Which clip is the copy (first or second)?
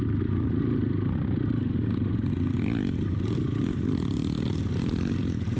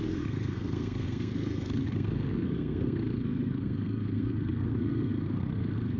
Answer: second